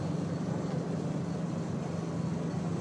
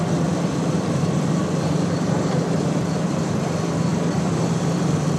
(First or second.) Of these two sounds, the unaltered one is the first